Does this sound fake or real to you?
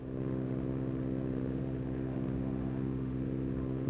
fake